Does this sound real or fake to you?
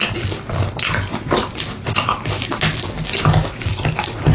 real